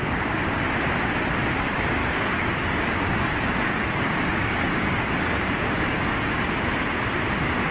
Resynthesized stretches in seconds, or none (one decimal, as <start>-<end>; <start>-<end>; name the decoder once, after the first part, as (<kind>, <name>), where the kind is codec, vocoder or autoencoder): 0.0-0.6 (codec, DAC); 2.0-6.4